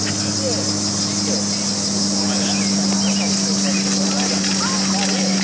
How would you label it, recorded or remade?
recorded